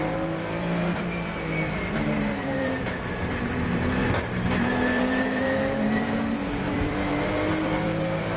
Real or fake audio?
fake